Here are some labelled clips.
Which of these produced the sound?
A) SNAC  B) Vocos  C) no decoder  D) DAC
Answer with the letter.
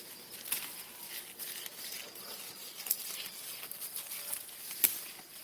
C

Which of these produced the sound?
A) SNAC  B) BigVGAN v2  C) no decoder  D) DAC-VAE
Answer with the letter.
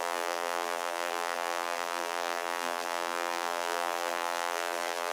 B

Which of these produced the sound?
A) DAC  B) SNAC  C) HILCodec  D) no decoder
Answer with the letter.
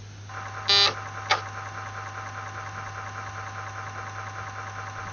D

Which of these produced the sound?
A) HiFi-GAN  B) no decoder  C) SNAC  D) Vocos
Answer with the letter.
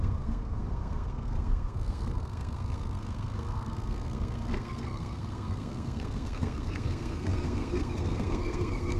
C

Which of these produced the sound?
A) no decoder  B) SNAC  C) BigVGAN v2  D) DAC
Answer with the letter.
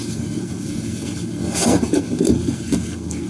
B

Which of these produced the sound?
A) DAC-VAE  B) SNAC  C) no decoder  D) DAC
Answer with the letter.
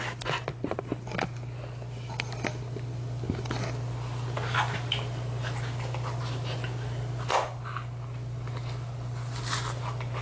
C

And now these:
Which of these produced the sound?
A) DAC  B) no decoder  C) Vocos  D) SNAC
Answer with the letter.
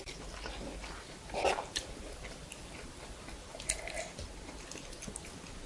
B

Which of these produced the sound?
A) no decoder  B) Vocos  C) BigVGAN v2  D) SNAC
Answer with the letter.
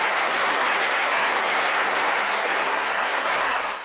D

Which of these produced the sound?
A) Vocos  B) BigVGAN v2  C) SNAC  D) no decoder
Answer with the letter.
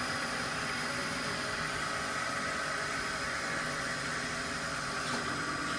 A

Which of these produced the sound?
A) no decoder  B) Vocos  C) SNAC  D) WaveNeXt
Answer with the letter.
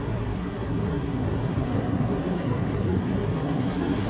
C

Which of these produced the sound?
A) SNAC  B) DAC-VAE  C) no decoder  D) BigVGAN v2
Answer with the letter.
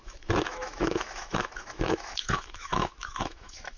B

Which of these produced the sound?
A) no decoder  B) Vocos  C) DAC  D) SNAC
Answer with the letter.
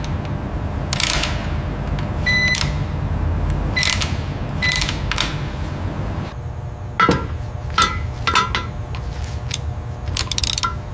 A